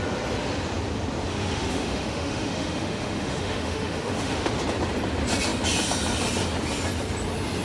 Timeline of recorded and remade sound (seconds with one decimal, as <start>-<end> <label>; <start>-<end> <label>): 0.0-1.3 recorded; 1.3-4.6 remade; 4.6-7.6 recorded